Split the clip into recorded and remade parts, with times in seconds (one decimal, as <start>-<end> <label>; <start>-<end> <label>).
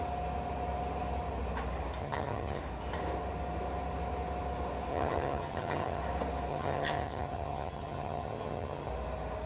0.0-2.0 recorded; 2.0-2.6 remade; 2.6-4.9 recorded; 4.9-6.0 remade; 6.0-6.5 recorded; 6.5-8.9 remade; 8.9-9.5 recorded